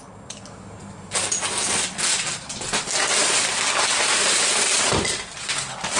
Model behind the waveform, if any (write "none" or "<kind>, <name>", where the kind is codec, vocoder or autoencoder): none